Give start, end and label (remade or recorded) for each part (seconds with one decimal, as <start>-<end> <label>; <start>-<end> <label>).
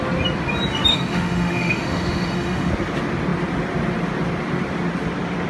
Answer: 0.0-0.9 recorded; 0.9-2.7 remade; 2.7-5.5 recorded